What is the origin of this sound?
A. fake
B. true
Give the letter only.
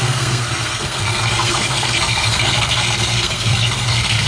A